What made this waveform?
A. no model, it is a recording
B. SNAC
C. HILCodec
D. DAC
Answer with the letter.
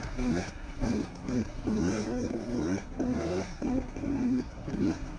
B